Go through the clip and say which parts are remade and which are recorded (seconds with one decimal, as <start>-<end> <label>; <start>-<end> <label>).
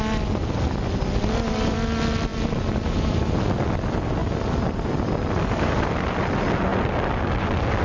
0.0-7.8 recorded